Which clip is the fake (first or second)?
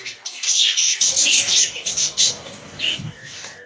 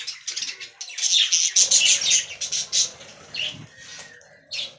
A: first